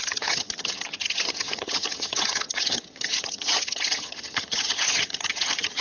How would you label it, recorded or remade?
remade